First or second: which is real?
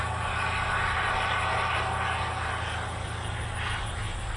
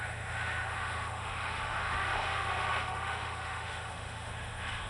first